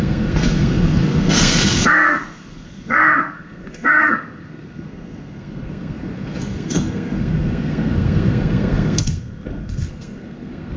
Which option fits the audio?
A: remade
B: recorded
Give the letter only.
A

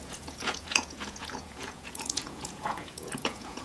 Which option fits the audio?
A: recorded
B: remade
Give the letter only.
B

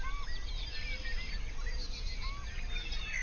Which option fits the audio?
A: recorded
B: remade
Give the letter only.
A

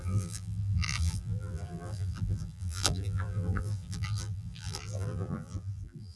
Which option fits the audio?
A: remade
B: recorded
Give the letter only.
A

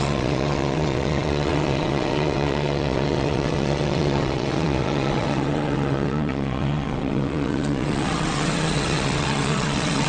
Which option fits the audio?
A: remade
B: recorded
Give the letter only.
A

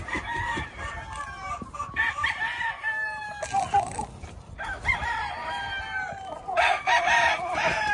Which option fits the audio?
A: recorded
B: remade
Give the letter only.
A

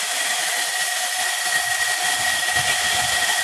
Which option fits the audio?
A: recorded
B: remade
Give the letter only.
A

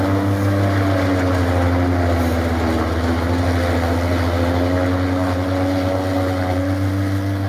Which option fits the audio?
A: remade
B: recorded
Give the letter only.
B